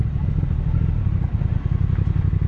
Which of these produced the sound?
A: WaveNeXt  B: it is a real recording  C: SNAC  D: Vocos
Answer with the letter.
B